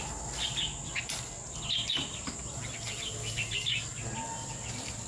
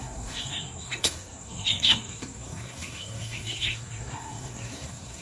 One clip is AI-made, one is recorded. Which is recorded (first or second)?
first